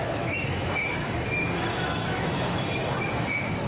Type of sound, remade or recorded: remade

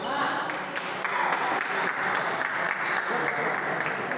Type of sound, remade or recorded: recorded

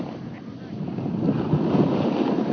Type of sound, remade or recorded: recorded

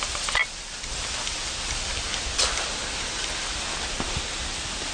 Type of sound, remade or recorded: recorded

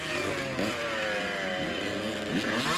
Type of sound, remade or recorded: recorded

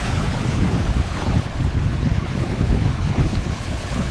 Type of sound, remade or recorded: remade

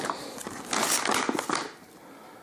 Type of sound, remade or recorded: recorded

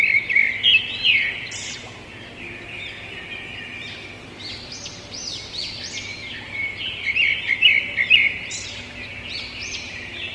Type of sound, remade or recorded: remade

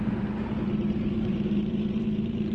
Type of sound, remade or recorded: remade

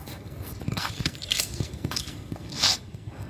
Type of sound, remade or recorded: remade